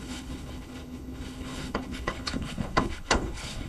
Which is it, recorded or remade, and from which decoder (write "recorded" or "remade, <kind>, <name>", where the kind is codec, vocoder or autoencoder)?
remade, codec, HILCodec